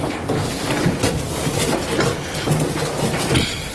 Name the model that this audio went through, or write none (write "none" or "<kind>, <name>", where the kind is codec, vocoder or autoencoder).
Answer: none